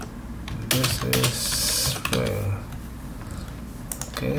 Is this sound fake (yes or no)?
no